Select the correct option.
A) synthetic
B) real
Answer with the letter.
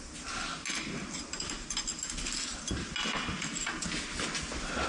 B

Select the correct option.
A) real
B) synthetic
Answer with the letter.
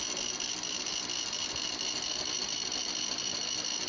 A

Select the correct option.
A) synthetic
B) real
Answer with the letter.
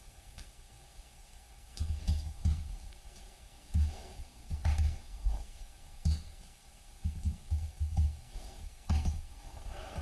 A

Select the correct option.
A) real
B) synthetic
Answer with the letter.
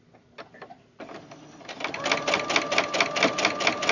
A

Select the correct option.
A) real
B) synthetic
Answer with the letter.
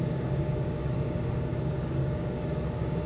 B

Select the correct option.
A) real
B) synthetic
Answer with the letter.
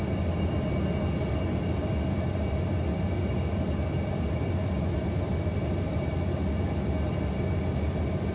A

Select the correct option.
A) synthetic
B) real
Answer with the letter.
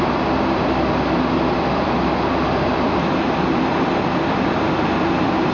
A